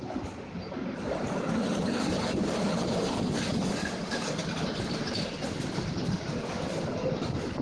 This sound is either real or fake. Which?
real